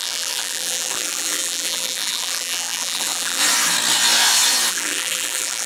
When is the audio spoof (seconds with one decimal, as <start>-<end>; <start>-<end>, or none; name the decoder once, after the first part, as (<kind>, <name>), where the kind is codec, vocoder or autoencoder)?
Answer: 0.0-3.4 (vocoder, BigVGAN v2); 4.7-5.7